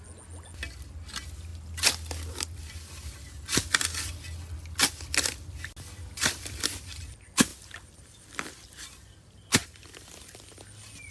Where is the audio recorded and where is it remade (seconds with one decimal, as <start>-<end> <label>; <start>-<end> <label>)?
0.0-7.5 recorded; 7.5-9.1 remade; 9.1-9.6 recorded; 9.6-10.6 remade; 10.6-11.1 recorded